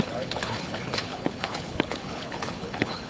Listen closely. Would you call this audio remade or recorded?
remade